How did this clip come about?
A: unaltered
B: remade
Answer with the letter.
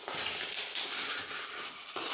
A